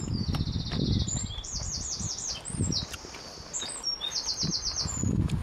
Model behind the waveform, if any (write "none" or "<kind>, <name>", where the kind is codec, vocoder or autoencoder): none